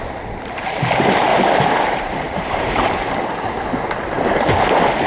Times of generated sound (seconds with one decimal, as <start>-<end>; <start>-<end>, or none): 1.3-3.1